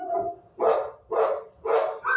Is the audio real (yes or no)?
yes